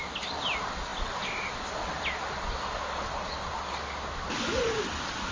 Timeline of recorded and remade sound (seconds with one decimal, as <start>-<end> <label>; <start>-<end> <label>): 0.0-5.3 recorded